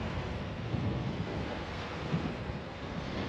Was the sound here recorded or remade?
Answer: remade